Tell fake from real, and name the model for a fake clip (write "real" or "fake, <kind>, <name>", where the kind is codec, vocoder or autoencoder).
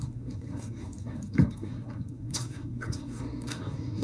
fake, codec, SNAC